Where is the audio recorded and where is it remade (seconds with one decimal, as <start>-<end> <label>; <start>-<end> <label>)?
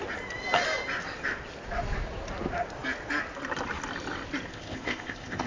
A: 0.0-4.5 recorded; 4.5-5.5 remade